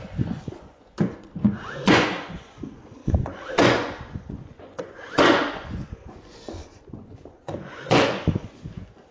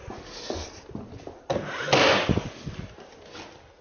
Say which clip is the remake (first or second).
first